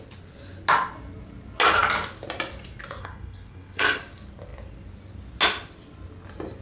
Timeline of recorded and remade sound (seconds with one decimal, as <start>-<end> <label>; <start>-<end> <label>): 0.0-3.0 recorded; 3.0-4.0 remade; 4.0-6.6 recorded

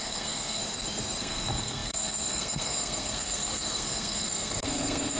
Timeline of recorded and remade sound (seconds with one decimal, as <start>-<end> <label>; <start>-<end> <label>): 0.0-0.6 remade; 0.6-1.2 recorded; 1.2-5.2 remade

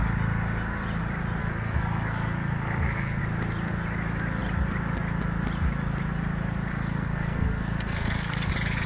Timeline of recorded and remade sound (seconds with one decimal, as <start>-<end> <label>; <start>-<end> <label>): 0.0-1.4 recorded; 1.4-3.2 remade; 3.2-6.7 recorded; 6.7-8.5 remade; 8.5-8.9 recorded